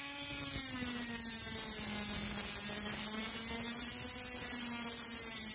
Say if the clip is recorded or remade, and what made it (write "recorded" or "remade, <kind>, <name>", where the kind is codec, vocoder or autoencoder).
recorded